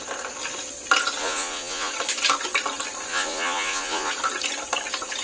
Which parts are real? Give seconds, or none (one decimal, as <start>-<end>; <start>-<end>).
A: 0.0-1.2; 1.9-3.1; 4.1-5.2